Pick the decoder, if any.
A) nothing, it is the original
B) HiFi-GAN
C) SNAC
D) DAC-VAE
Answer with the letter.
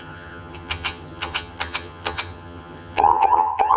B